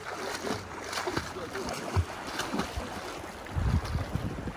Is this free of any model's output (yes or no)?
yes